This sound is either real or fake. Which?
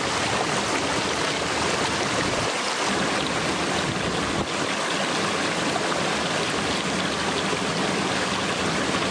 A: real